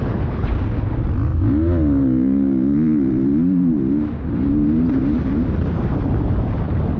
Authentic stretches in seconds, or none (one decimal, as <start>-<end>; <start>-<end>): 0.5-7.0